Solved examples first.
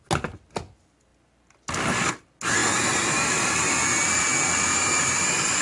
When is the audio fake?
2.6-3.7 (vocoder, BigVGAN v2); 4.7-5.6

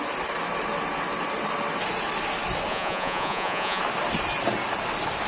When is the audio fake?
2.7-3.8 (vocoder, Vocos)

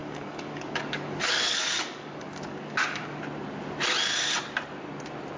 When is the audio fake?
0.0-3.2 (codec, DAC)